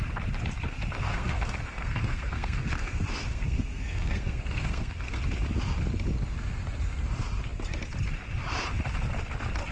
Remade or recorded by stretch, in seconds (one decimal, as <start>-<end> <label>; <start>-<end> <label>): 0.0-1.1 recorded; 1.1-5.2 remade; 5.2-9.7 recorded